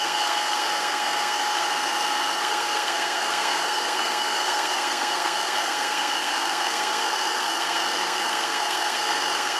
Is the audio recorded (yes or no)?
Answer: no